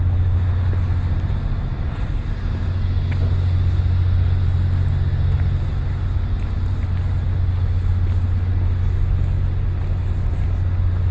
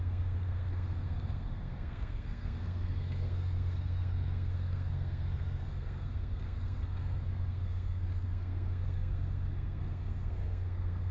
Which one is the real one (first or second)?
first